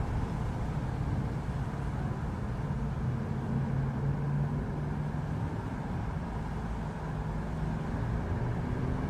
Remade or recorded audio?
recorded